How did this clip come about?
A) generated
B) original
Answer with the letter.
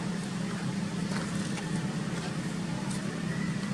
B